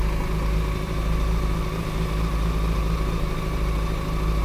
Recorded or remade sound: recorded